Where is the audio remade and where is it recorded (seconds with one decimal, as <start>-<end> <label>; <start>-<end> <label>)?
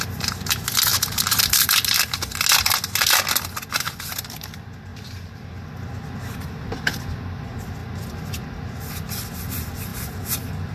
0.0-0.9 recorded; 0.9-2.0 remade; 2.0-4.9 recorded; 4.9-5.5 remade; 5.5-10.7 recorded